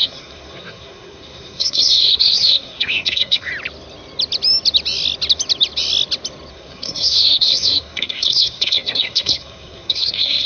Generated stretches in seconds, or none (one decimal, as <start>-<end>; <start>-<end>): 0.0-3.5; 6.5-10.5